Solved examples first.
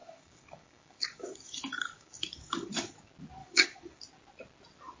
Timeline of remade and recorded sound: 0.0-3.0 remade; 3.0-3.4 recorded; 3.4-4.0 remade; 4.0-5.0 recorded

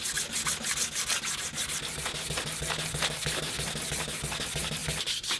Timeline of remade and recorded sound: 0.0-5.4 recorded

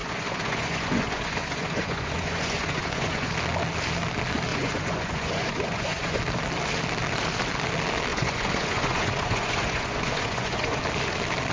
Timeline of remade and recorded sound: 0.0-3.3 remade; 3.3-4.5 recorded; 4.5-6.2 remade; 6.2-8.1 recorded; 8.1-10.8 remade; 10.8-11.5 recorded

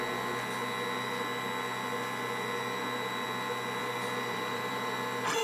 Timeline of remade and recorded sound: 0.0-3.8 recorded; 3.8-5.4 remade

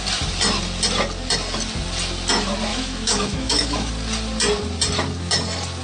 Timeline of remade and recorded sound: 0.0-2.7 recorded; 2.7-3.9 remade; 3.9-5.8 recorded